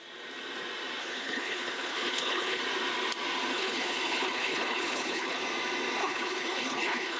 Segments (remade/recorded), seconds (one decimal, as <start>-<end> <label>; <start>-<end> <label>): 0.0-1.0 recorded; 1.0-2.6 remade; 2.6-3.5 recorded; 3.5-5.4 remade; 5.4-6.0 recorded; 6.0-7.2 remade